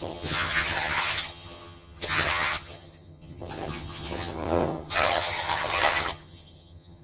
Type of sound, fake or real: fake